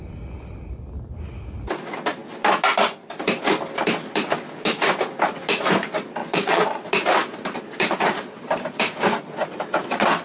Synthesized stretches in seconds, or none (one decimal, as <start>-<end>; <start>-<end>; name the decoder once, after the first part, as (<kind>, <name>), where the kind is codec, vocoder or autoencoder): 6.2-6.8 (vocoder, Vocos)